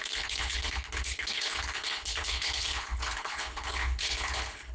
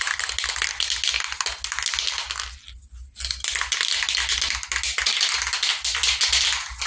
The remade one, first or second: first